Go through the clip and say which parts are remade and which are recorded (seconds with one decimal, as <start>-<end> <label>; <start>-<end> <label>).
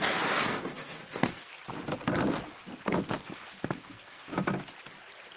0.0-1.5 remade; 1.5-3.0 recorded; 3.0-4.2 remade; 4.2-5.4 recorded